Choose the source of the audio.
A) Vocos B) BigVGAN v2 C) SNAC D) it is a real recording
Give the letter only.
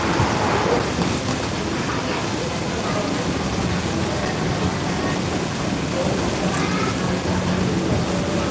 D